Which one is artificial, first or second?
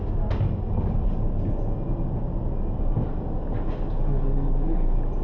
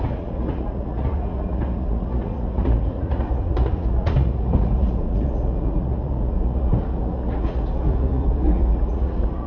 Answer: second